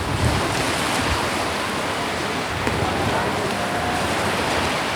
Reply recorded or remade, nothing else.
recorded